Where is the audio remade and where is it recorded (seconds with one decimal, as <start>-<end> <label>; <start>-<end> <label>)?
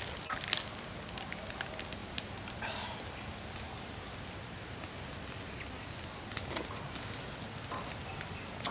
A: 0.0-2.0 recorded; 2.0-4.0 remade; 4.0-8.7 recorded